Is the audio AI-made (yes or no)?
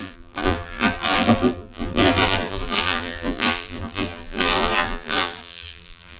yes